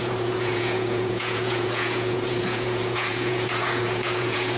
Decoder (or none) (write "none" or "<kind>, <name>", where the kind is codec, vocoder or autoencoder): vocoder, Vocos